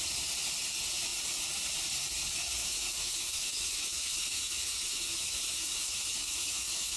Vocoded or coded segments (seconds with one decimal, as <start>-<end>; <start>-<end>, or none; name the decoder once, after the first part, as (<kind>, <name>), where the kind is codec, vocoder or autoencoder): 2.6-7.0 (autoencoder, DAC-VAE)